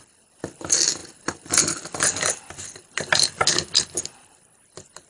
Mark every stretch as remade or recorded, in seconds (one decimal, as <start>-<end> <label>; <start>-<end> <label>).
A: 0.0-5.1 recorded